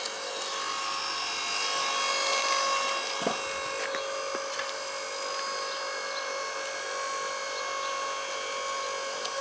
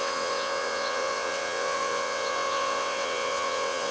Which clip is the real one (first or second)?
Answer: first